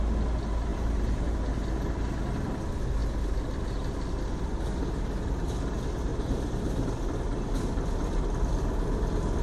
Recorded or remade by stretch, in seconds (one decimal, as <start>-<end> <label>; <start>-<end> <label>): 0.0-0.7 recorded; 0.7-1.3 remade; 1.3-6.1 recorded; 6.1-6.9 remade; 6.9-9.4 recorded